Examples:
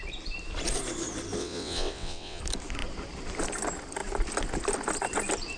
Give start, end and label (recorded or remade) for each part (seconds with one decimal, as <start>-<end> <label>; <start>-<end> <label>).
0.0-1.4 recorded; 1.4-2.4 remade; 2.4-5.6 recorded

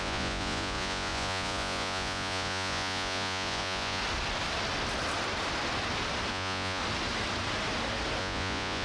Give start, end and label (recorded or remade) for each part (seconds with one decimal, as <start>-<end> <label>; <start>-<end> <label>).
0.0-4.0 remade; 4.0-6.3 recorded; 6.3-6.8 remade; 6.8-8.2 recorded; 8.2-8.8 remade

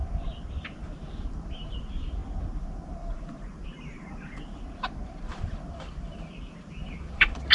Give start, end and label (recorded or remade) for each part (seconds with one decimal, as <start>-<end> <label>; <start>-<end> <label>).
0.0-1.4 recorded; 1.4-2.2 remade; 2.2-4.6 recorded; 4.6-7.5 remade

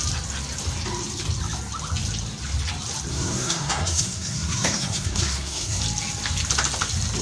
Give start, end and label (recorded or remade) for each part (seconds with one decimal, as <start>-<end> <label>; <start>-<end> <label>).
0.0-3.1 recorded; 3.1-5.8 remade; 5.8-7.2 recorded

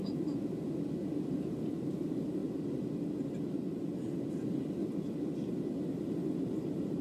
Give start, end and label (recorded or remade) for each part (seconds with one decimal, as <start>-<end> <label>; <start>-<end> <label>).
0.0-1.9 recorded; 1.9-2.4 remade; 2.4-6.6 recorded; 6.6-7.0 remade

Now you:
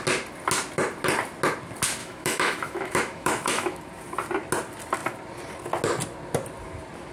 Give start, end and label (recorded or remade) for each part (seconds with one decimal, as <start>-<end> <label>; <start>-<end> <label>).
0.0-2.0 recorded; 2.0-3.8 remade; 3.8-7.1 recorded

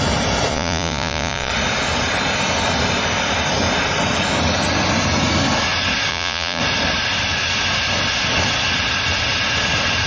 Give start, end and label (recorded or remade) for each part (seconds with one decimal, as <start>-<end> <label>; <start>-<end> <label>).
0.0-0.5 recorded; 0.5-1.5 remade; 1.5-6.1 recorded; 6.1-6.6 remade; 6.6-10.1 recorded